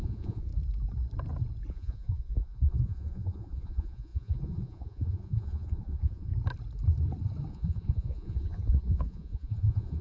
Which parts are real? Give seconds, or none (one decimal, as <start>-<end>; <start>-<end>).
0.5-1.7; 6.3-7.5